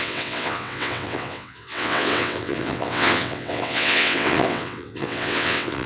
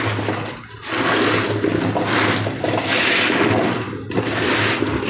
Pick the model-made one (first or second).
first